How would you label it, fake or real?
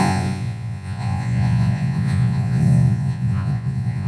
fake